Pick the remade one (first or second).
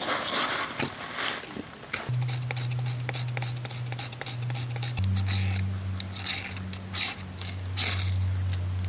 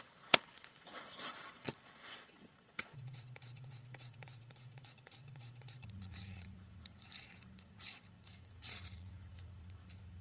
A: second